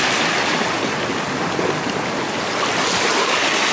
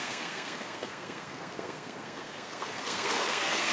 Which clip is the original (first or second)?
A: first